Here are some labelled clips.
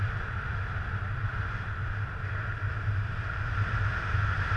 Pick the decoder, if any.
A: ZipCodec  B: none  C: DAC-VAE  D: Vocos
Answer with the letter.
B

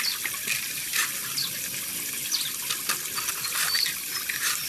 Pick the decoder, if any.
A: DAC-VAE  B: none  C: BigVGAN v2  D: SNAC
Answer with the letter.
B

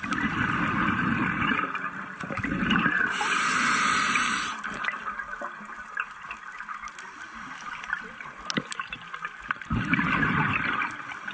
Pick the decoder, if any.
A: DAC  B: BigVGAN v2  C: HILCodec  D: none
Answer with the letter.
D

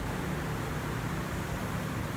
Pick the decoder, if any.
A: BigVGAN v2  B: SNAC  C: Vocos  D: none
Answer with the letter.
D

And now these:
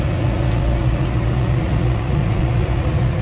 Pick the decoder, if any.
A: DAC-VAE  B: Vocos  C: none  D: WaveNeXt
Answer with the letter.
B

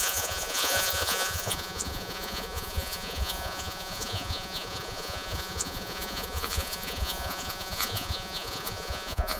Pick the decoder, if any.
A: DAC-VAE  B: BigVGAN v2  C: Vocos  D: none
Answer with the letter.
C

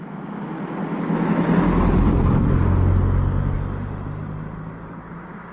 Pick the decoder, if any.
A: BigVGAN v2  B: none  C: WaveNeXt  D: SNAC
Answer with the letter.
B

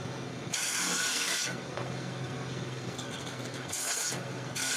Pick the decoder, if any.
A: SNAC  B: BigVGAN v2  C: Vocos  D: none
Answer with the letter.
A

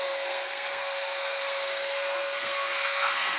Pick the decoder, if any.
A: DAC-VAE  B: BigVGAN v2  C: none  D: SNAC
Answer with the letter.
D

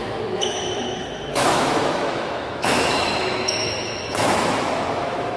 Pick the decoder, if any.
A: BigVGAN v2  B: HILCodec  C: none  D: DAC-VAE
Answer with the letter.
D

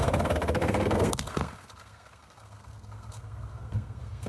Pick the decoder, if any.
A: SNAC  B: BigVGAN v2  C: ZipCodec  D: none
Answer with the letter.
A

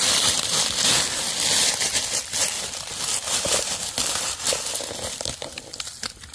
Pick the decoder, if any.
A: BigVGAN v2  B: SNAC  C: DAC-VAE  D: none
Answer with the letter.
D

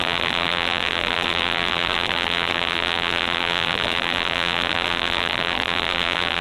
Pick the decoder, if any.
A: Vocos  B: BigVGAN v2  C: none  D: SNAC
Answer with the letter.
B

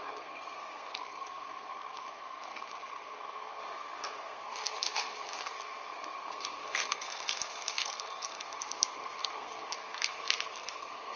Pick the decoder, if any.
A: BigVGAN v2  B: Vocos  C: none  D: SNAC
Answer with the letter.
D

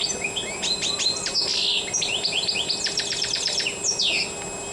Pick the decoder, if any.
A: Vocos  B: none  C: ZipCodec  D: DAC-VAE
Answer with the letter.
B